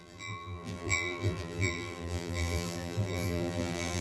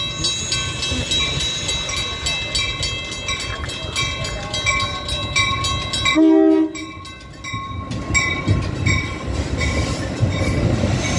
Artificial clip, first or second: first